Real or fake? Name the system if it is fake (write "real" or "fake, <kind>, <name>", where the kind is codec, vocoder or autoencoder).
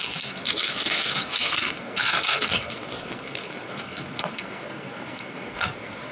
fake, codec, SNAC